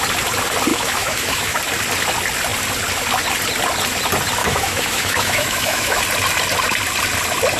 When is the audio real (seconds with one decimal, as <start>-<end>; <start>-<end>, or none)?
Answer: 0.0-0.7; 1.6-4.4; 6.0-7.6